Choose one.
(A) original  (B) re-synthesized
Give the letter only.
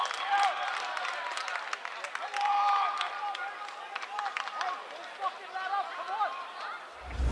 A